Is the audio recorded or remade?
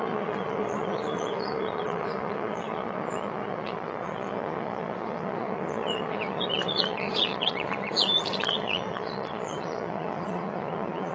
remade